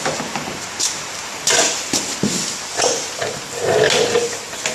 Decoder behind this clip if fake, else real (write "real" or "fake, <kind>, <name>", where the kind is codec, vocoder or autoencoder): real